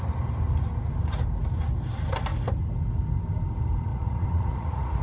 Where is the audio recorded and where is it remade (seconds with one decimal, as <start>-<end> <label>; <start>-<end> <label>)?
0.0-3.9 recorded; 3.9-5.0 remade